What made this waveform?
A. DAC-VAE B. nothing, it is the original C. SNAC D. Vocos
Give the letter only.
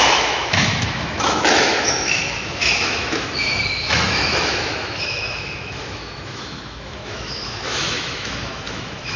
A